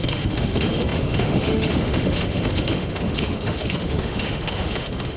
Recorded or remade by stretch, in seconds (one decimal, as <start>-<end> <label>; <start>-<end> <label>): 0.0-5.2 remade